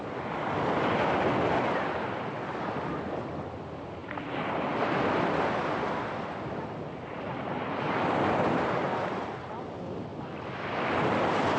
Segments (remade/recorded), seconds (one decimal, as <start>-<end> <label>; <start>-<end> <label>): 0.0-10.1 remade; 10.1-11.1 recorded; 11.1-11.6 remade